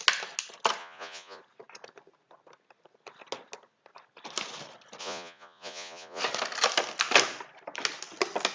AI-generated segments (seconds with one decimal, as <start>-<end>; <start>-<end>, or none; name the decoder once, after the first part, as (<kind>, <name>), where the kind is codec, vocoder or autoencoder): 0.8-1.4 (vocoder, Vocos); 5.0-6.2